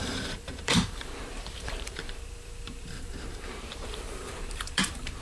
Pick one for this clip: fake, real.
fake